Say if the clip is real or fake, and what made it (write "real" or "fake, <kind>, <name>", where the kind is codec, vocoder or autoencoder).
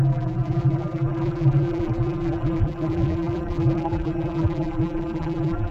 fake, vocoder, BigVGAN v2